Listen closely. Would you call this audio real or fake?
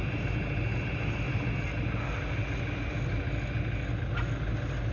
real